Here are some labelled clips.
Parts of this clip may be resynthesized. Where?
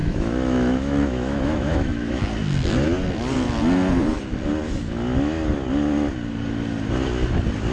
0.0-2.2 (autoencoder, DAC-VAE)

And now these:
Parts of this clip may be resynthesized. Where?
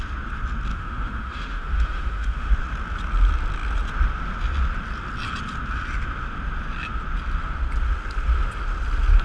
0.7-2.5 (autoencoder, DAC-VAE)